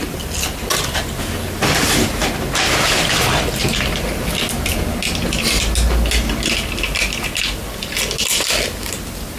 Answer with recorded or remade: recorded